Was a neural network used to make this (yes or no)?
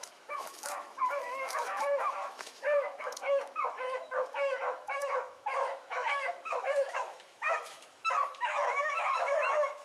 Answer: yes